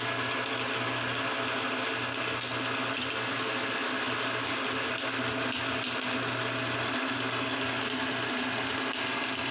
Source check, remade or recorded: recorded